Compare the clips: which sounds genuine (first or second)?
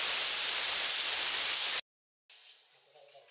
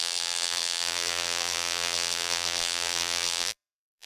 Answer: first